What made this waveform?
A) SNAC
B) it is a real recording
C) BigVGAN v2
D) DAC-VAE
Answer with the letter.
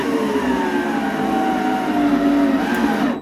B